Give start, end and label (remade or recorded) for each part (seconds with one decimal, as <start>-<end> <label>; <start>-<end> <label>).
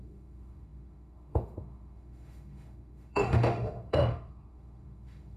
0.0-5.4 remade